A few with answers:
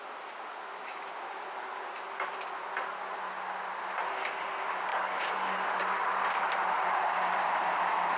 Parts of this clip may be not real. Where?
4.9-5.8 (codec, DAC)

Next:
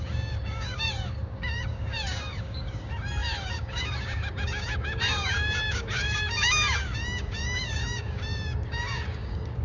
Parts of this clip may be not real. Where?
0.0-9.6 (codec, DAC)

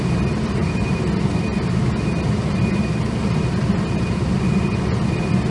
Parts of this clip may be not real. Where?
none